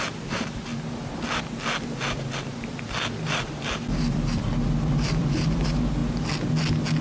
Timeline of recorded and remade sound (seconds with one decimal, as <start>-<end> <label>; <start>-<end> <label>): 0.0-0.7 remade; 0.7-3.1 recorded; 3.1-6.0 remade; 6.0-7.0 recorded